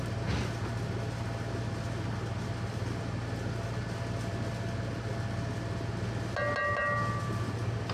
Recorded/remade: recorded